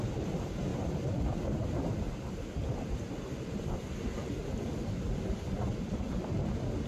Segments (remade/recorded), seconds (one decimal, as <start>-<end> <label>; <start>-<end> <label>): 0.0-0.7 remade; 0.7-1.5 recorded; 1.5-2.6 remade; 2.6-6.9 recorded